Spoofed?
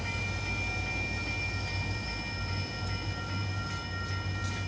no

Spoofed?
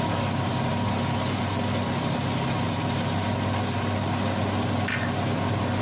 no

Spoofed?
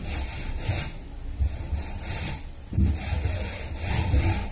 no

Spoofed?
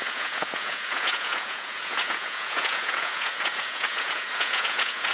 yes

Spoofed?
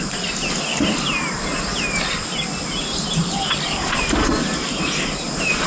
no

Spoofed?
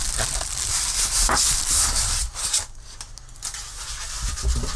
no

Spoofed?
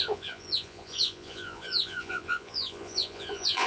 yes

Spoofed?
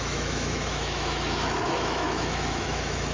yes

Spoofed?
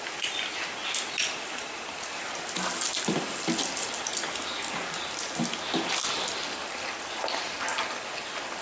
no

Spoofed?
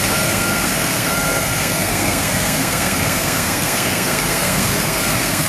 yes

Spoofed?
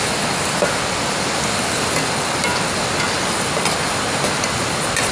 no